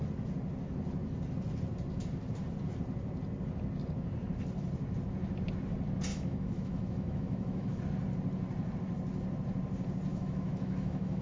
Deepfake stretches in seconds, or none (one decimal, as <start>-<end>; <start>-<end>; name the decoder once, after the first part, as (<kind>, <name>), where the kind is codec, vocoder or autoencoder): 6.1-7.8 (autoencoder, DAC-VAE); 10.1-11.2